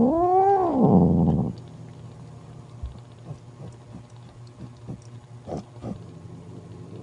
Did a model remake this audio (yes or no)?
no